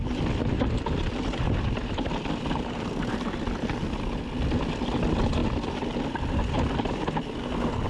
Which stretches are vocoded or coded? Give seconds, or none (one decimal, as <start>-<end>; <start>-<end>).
none